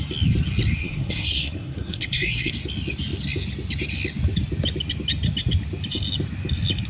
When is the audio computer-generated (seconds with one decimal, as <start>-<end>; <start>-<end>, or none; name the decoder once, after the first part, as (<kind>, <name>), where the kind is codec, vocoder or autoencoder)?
0.8-2.5 (codec, SNAC)